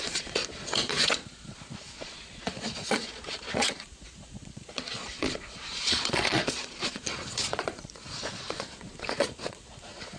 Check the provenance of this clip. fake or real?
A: fake